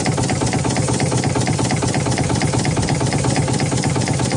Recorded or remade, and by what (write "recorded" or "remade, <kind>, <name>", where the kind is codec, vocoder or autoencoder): recorded